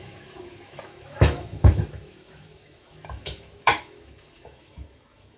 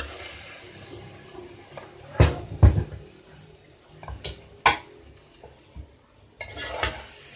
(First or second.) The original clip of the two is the second